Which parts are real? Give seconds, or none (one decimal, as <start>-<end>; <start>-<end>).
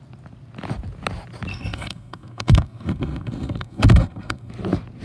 0.0-1.5; 4.5-5.0